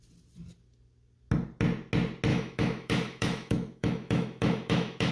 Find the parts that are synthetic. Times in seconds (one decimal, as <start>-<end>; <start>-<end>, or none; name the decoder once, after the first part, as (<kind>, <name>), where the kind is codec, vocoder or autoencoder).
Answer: 2.3-5.1 (autoencoder, DAC-VAE)